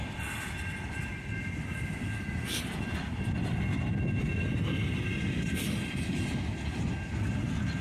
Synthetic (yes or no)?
no